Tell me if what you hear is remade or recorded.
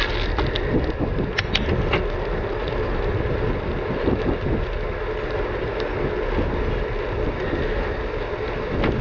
recorded